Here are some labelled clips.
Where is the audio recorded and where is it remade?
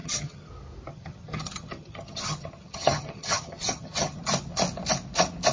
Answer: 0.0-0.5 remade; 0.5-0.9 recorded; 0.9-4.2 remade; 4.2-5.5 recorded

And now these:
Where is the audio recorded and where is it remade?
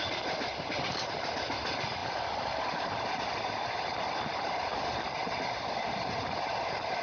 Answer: 0.0-7.0 recorded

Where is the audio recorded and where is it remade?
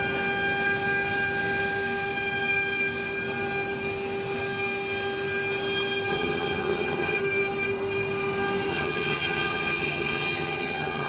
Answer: 0.0-6.1 recorded; 6.1-7.2 remade; 7.2-8.7 recorded; 8.7-11.1 remade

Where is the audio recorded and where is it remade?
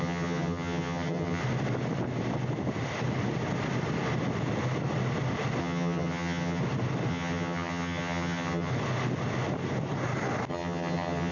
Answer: 0.0-1.4 remade; 1.4-5.6 recorded; 5.6-6.6 remade; 6.6-7.1 recorded; 7.1-8.7 remade; 8.7-10.5 recorded; 10.5-11.3 remade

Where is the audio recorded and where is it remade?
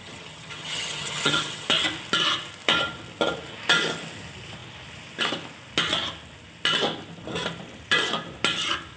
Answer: 0.0-1.7 remade; 1.7-9.0 recorded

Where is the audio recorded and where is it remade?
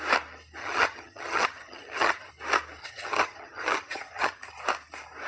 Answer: 0.0-0.6 recorded; 0.6-2.3 remade; 2.3-2.8 recorded; 2.8-4.5 remade; 4.5-5.3 recorded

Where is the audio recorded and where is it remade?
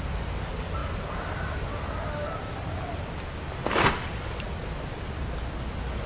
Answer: 0.0-6.1 recorded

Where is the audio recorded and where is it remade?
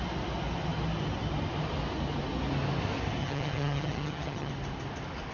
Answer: 0.0-3.2 recorded; 3.2-4.5 remade; 4.5-5.3 recorded